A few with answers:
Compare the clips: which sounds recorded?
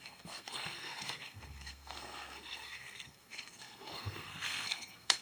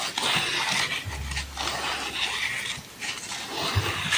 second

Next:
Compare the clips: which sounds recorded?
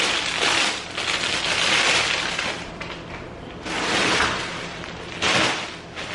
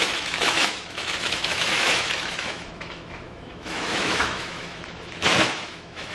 first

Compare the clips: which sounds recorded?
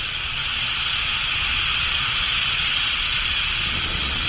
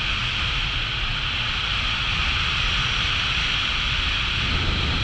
second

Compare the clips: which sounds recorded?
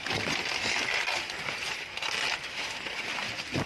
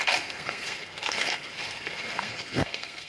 first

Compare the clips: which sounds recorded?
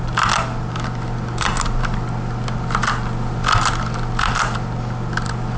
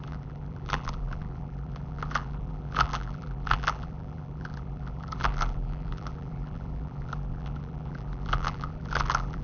first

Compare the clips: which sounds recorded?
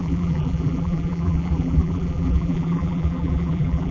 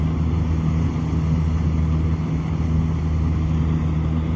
second